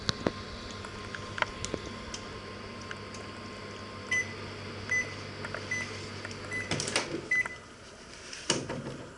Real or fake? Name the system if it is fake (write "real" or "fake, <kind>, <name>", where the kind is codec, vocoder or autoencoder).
real